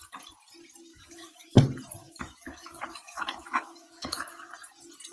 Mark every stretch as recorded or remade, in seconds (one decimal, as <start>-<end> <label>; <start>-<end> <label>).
0.0-0.9 recorded; 0.9-1.6 remade; 1.6-2.0 recorded; 2.0-4.5 remade; 4.5-5.1 recorded